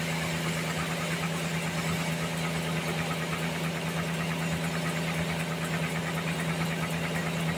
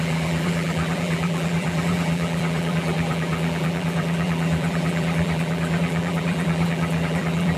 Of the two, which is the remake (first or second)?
second